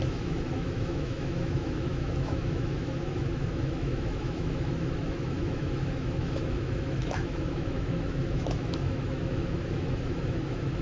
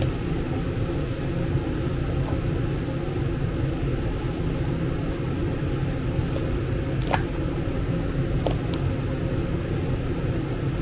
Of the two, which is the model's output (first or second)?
first